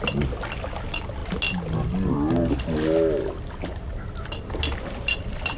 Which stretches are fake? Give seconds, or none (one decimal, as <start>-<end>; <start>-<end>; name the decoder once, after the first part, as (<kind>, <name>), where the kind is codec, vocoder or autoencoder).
none